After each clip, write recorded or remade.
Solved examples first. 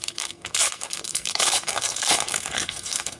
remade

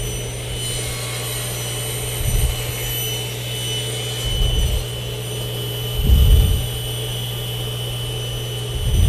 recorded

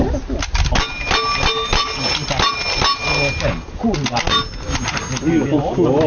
recorded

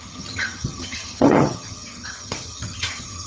remade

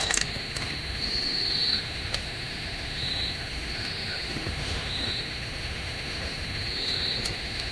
remade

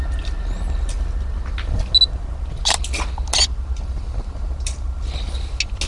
recorded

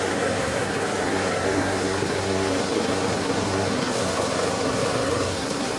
remade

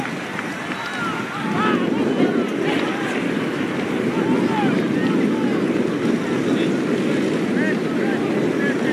recorded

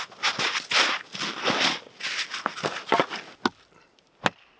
recorded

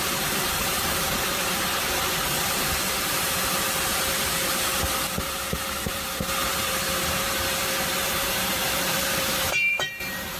remade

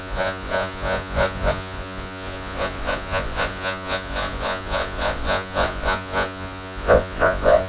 remade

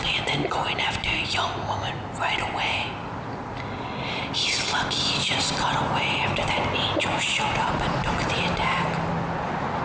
recorded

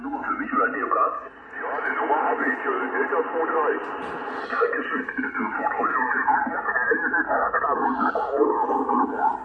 recorded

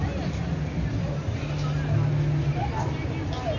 recorded